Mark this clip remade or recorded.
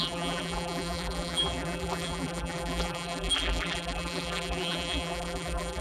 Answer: remade